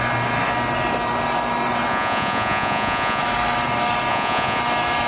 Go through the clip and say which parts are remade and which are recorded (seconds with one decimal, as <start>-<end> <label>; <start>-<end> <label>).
0.0-1.9 recorded; 1.9-3.2 remade; 3.2-4.1 recorded; 4.1-4.6 remade; 4.6-5.1 recorded